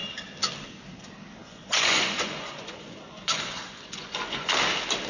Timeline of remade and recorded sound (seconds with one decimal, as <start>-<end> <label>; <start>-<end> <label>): 0.0-1.4 recorded; 1.4-4.5 remade; 4.5-5.1 recorded